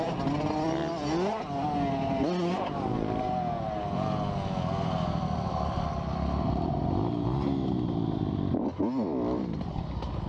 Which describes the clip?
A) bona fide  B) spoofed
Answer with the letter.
A